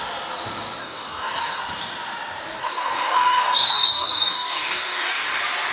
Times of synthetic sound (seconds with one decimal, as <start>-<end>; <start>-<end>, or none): 0.8-1.6; 2.5-5.3